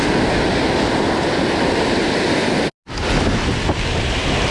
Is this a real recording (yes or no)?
yes